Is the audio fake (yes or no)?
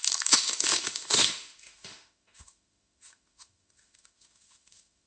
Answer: yes